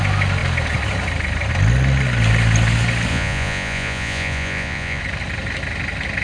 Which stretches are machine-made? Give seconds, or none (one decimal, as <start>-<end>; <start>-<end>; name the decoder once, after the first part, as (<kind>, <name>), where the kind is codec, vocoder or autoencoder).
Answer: 3.1-5.0 (vocoder, Vocos)